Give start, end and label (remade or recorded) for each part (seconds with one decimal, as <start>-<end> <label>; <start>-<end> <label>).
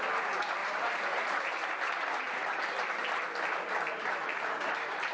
0.0-0.6 recorded; 0.6-1.7 remade; 1.7-5.1 recorded